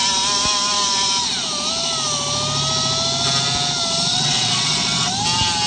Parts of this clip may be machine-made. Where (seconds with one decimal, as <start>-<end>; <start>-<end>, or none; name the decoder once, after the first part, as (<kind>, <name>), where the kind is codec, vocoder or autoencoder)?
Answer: 4.1-5.1 (vocoder, WaveNeXt)

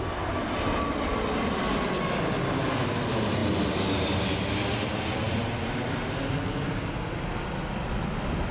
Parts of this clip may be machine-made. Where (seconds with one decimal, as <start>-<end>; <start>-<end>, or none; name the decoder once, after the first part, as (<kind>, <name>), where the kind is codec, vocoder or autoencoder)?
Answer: none

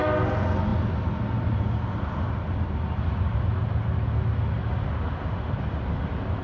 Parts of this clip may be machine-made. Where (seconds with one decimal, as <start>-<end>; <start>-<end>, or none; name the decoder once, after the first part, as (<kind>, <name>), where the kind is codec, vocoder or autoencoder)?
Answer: none